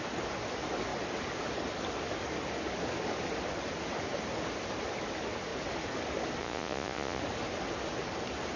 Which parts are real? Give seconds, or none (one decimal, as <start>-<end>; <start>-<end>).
0.0-6.4; 7.2-8.6